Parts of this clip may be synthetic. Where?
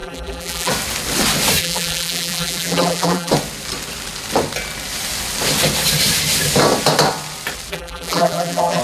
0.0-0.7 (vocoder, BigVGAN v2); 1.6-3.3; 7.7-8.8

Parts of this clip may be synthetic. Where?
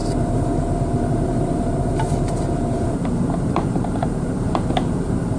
0.0-5.4 (vocoder, BigVGAN v2)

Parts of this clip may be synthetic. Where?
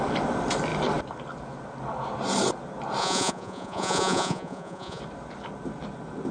3.0-5.0 (vocoder, Vocos)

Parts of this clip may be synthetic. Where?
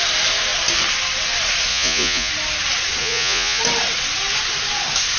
1.7-2.3 (vocoder, Vocos); 3.0-3.6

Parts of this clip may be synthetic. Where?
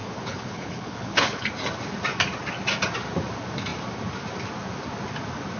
0.0-1.5 (codec, HILCodec)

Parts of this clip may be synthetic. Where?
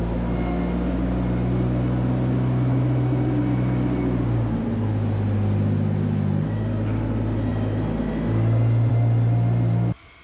none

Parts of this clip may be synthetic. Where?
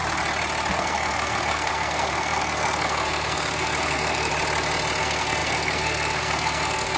0.7-4.3 (codec, SNAC); 5.0-7.0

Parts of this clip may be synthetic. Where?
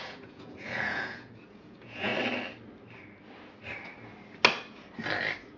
0.0-2.1 (vocoder, Vocos)